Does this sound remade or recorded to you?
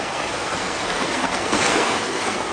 remade